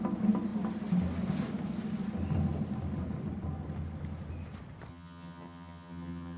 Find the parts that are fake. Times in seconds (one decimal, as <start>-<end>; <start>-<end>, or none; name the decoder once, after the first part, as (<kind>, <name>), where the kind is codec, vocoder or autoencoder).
4.9-6.4 (vocoder, HiFi-GAN)